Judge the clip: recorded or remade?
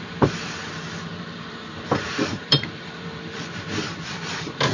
remade